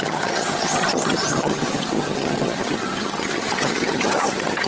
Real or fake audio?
fake